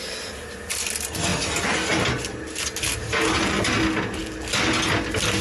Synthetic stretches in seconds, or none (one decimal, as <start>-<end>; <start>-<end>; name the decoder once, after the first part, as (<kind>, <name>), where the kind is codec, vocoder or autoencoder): none